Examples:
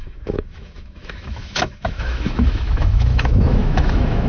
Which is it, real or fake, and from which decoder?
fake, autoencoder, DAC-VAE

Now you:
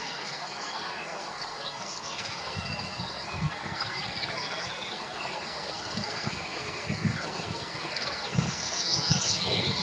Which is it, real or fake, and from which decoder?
fake, codec, SNAC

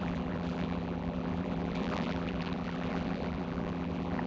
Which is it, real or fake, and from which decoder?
fake, vocoder, BigVGAN v2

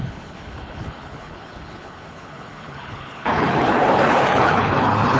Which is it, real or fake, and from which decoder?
fake, codec, HILCodec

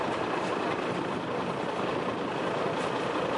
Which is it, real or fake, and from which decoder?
real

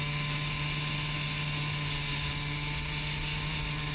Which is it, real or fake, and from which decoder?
real